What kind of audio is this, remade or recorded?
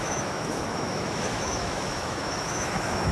remade